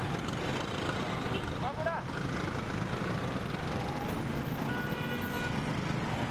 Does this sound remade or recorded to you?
recorded